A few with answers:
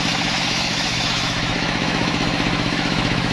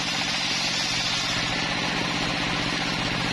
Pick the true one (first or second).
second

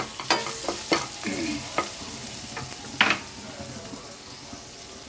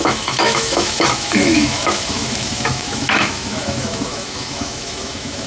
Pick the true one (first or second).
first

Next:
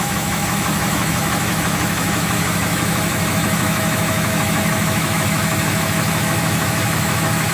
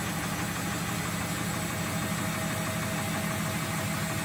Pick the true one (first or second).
second